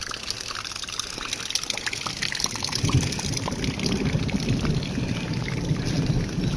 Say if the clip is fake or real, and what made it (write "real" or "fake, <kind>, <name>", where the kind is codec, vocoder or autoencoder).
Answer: real